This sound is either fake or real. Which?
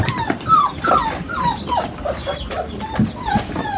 fake